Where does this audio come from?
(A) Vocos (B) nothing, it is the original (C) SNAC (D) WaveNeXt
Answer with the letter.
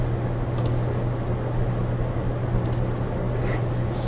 B